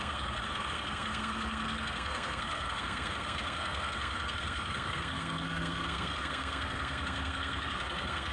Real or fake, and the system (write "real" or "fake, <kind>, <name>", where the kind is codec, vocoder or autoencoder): fake, codec, SNAC